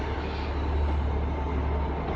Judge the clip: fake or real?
real